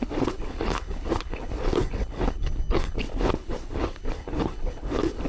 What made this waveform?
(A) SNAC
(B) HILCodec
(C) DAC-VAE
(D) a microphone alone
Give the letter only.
B